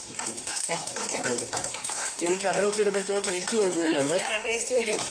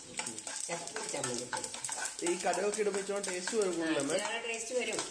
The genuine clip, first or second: second